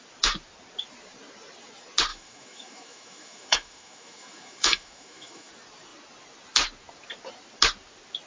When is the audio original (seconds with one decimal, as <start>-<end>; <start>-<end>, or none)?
0.0-2.1; 5.5-8.3

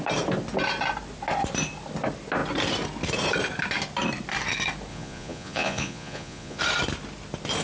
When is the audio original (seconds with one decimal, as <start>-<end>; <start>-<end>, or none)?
0.0-4.9; 6.6-7.6

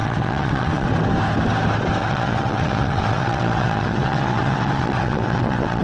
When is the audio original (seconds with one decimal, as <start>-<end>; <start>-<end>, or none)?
0.9-2.0

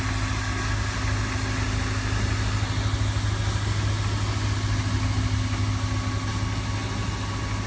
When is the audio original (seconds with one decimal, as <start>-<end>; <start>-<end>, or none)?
0.0-7.7

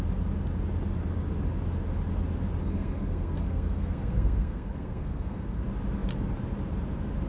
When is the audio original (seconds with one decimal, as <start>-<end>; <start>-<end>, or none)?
0.0-2.6; 5.6-7.3